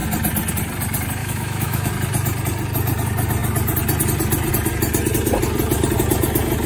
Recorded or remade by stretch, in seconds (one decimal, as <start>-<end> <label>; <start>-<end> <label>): 0.0-1.2 recorded; 1.2-1.9 remade; 1.9-6.7 recorded

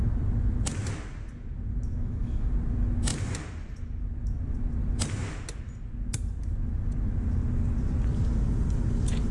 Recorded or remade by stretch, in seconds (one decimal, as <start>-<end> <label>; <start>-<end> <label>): 0.0-1.9 recorded; 1.9-2.5 remade; 2.5-9.3 recorded

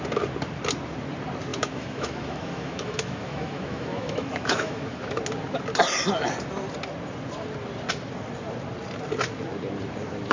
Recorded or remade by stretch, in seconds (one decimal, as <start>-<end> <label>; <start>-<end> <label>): 0.0-1.5 recorded; 1.5-5.2 remade; 5.2-10.3 recorded

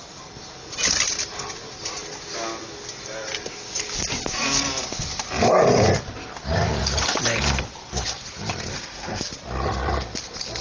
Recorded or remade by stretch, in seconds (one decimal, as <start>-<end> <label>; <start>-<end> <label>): 0.0-8.7 recorded; 8.7-9.2 remade; 9.2-10.6 recorded

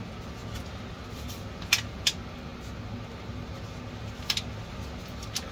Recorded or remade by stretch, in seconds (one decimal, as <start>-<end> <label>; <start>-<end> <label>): 0.0-5.5 recorded

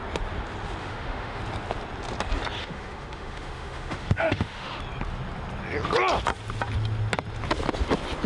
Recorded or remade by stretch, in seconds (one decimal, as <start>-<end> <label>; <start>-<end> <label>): 0.0-0.8 recorded; 0.8-1.4 remade; 1.4-2.6 recorded; 2.6-4.8 remade; 4.8-8.3 recorded